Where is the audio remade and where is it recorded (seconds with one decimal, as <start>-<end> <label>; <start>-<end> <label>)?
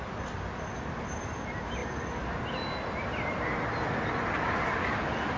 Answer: 0.0-5.4 recorded